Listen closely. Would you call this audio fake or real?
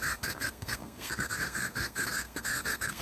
fake